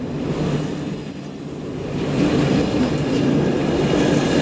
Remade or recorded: recorded